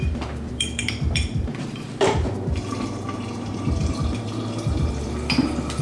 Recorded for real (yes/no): no